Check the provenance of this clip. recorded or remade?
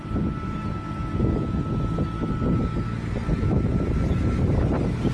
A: recorded